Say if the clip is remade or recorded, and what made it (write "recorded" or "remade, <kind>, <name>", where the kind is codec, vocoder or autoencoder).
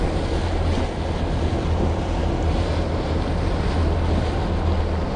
recorded